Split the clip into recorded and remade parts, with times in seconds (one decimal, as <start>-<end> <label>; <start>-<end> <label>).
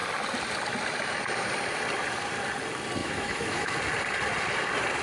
0.0-3.0 recorded; 3.0-3.8 remade; 3.8-5.0 recorded